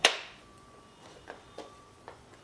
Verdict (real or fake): fake